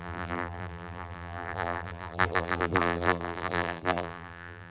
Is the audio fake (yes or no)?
yes